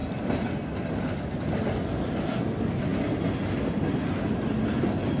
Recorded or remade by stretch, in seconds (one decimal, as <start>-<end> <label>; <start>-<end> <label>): 0.0-5.2 recorded